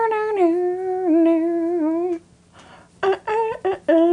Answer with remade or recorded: recorded